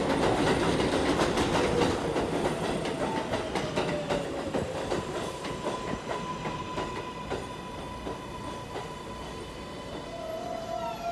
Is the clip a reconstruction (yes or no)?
no